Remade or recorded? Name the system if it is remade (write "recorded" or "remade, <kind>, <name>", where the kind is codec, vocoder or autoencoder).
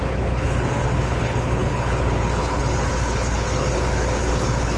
remade, codec, HILCodec